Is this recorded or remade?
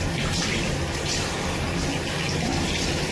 recorded